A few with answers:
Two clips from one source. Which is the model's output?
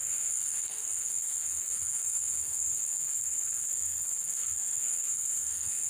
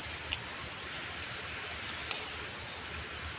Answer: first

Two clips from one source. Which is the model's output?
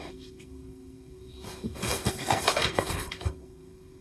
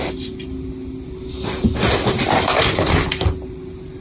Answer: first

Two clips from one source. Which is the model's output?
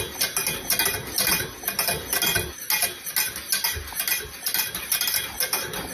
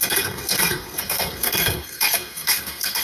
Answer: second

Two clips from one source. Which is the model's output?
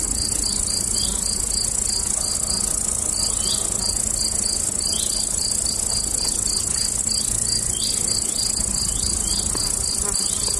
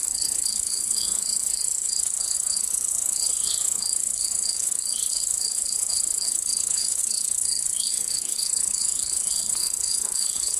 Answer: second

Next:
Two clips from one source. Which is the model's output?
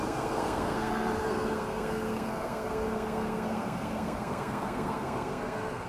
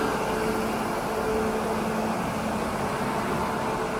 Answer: first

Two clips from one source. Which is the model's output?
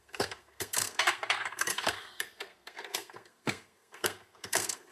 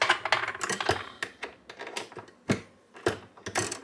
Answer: first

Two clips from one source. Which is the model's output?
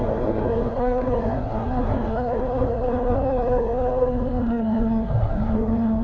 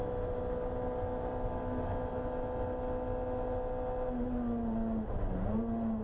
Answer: first